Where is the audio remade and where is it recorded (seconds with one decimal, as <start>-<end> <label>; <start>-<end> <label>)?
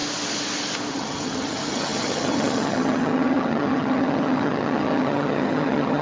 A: 0.0-0.9 recorded; 0.9-6.0 remade